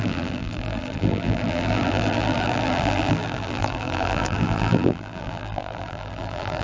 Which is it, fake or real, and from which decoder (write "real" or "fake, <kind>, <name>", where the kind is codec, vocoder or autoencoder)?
fake, vocoder, BigVGAN v2